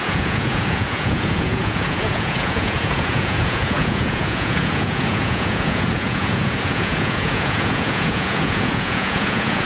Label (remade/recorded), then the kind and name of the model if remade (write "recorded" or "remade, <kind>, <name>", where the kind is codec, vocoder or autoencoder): remade, vocoder, Vocos